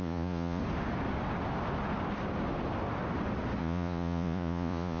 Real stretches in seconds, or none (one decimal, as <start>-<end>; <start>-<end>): 0.6-3.6